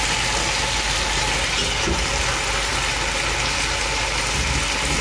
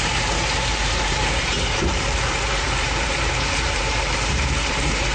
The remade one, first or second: second